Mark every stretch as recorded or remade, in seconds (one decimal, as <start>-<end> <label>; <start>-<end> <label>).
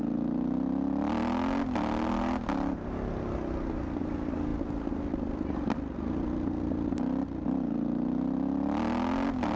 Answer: 0.0-9.6 recorded